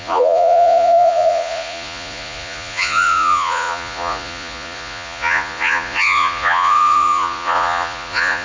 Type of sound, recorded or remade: remade